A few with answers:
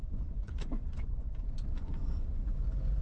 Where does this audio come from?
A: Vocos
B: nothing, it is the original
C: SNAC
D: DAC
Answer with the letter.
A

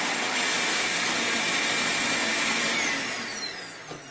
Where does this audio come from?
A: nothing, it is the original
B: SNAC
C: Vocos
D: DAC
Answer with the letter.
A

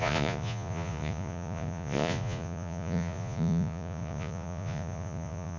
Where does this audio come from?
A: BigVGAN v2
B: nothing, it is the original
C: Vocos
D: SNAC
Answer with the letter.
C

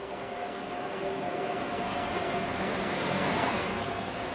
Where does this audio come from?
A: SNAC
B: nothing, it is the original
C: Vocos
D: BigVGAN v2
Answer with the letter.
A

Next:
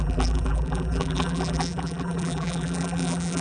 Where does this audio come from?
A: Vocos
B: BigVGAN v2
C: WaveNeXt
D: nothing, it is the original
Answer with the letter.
B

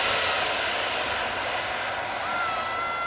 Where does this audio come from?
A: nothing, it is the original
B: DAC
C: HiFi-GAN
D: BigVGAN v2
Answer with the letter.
A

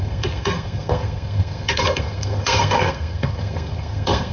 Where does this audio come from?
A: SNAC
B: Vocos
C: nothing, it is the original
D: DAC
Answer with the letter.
A